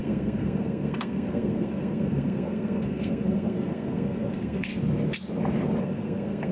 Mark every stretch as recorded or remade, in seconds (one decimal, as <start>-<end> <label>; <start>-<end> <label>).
0.0-4.7 remade; 4.7-5.8 recorded; 5.8-6.5 remade